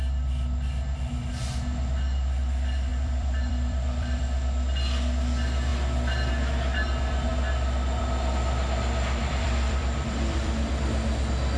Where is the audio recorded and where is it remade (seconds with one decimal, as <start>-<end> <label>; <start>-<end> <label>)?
0.0-2.9 recorded; 2.9-4.2 remade; 4.2-9.2 recorded; 9.2-10.7 remade; 10.7-11.6 recorded